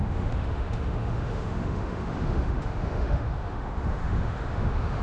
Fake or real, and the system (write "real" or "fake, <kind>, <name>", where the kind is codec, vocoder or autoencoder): fake, autoencoder, DAC-VAE